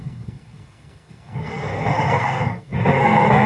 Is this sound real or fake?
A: fake